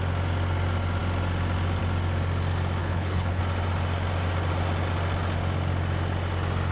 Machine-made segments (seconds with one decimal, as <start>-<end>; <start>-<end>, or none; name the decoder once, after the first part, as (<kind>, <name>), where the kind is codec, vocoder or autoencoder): 2.8-3.4 (codec, HILCodec)